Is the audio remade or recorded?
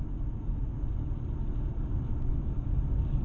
recorded